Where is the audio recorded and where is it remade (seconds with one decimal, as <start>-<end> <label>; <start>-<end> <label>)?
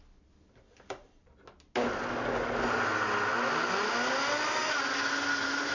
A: 0.0-5.7 recorded